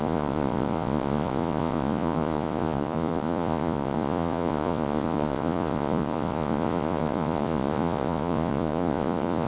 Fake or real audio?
fake